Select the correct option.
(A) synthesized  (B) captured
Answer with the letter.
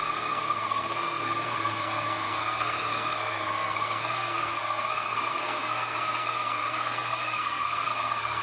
A